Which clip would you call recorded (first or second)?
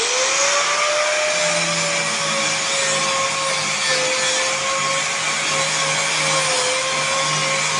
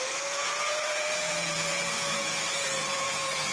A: first